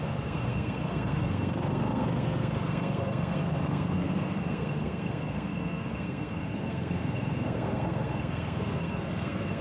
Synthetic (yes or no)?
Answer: yes